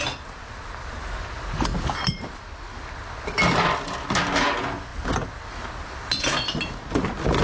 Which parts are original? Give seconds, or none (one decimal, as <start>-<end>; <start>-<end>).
0.0-7.4